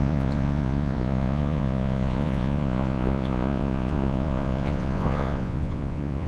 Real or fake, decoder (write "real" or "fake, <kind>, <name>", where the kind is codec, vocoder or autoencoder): fake, vocoder, Vocos